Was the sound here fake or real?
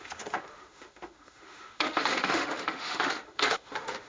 fake